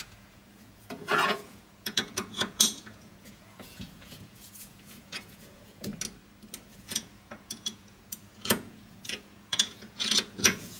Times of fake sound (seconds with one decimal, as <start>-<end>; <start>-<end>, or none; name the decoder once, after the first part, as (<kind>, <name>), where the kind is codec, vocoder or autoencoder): 0.0-5.9 (vocoder, Vocos); 6.7-10.8